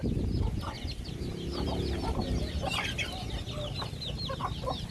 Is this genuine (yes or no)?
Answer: yes